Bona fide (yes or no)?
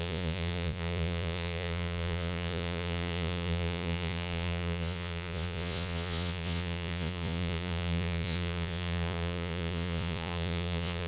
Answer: no